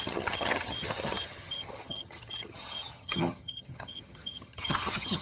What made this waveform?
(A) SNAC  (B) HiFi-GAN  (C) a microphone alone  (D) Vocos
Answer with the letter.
B